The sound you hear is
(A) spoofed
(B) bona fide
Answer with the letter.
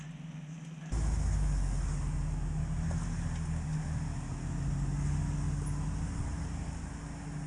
B